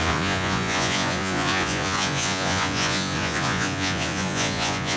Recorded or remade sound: remade